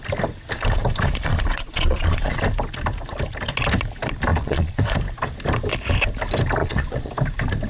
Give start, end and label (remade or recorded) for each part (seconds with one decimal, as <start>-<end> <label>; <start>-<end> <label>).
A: 0.0-1.3 recorded; 1.3-2.4 remade; 2.4-4.3 recorded; 4.3-4.8 remade; 4.8-6.6 recorded; 6.6-7.1 remade; 7.1-7.7 recorded